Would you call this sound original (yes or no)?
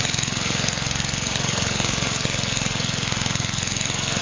no